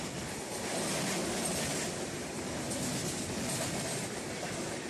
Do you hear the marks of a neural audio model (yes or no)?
no